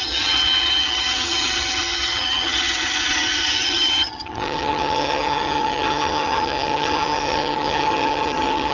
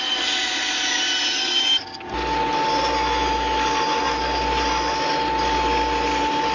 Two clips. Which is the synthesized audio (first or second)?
first